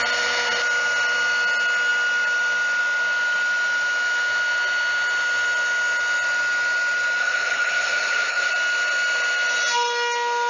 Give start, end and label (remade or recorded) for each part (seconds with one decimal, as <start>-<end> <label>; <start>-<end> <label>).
0.0-7.2 recorded; 7.2-8.5 remade; 8.5-10.5 recorded